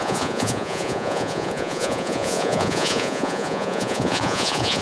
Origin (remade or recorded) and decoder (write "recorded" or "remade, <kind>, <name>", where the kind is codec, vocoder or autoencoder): remade, vocoder, Vocos